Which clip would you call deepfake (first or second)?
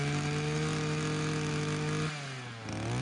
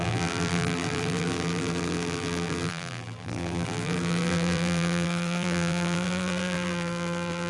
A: second